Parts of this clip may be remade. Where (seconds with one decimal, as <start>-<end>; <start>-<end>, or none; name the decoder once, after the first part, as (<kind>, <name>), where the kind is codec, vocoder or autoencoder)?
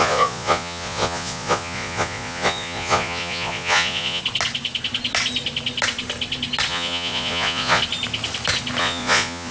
0.0-4.2 (vocoder, Vocos); 6.7-7.8; 8.8-9.5